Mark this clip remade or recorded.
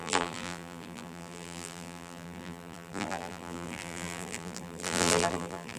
remade